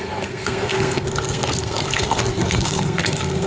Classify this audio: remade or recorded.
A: remade